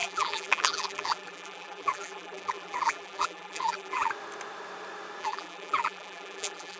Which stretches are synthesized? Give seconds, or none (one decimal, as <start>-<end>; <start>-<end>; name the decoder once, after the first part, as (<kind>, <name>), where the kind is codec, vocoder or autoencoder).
0.0-4.1 (vocoder, BigVGAN v2); 5.2-6.8